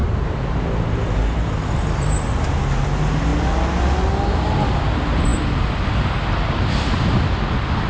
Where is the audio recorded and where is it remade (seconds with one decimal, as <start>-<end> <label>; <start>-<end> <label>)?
0.0-7.9 recorded